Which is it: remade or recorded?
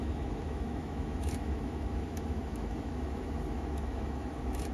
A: remade